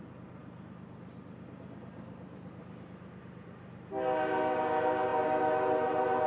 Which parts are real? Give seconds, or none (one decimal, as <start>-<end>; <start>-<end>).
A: 0.0-6.3